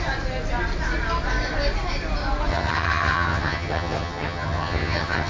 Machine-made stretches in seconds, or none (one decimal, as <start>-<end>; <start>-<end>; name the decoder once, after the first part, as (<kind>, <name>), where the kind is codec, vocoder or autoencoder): 2.5-5.3 (vocoder, HiFi-GAN)